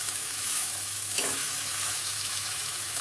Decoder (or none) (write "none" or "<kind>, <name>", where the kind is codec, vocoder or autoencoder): autoencoder, DAC-VAE